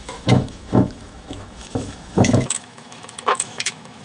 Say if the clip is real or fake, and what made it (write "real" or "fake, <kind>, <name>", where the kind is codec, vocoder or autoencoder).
fake, autoencoder, DAC-VAE